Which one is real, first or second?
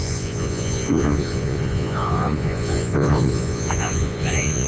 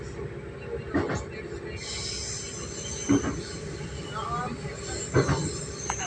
second